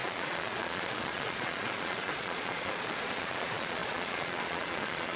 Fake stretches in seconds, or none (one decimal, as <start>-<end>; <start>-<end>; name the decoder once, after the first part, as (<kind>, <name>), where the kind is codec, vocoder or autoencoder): 0.0-5.2 (vocoder, Vocos)